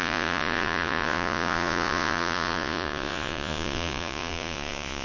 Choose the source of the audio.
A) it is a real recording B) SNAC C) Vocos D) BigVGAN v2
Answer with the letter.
C